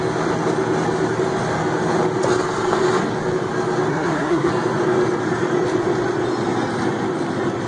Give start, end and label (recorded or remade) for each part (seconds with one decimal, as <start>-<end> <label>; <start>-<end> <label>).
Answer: 0.0-3.9 recorded; 3.9-4.5 remade; 4.5-7.7 recorded